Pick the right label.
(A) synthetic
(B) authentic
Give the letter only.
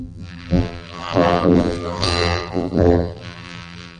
A